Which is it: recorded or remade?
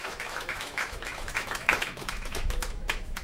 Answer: remade